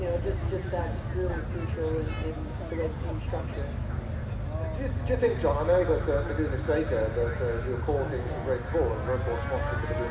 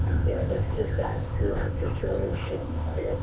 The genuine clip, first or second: first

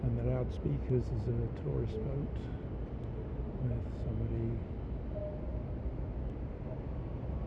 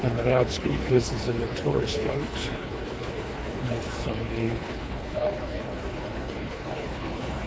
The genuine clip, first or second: first